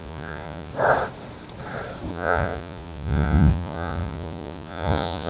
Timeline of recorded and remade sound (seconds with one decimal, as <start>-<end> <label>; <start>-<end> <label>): 0.0-0.7 remade; 0.7-2.1 recorded; 2.1-5.3 remade